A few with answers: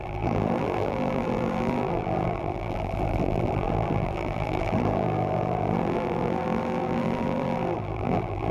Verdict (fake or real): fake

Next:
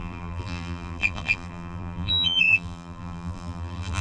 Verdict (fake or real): fake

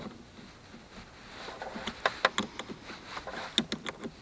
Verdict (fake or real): real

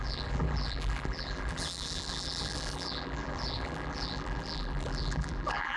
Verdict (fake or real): fake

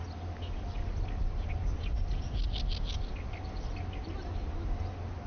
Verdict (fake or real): real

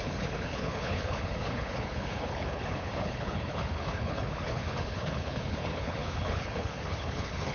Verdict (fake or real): fake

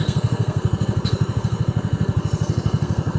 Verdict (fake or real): fake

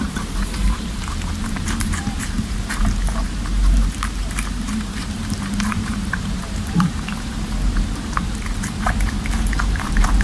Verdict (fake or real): fake